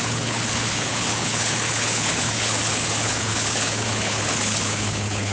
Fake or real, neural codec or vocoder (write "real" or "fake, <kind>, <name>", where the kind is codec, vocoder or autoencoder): fake, codec, HILCodec